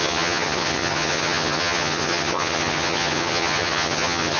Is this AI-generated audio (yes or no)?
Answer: yes